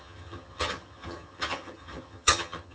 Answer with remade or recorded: remade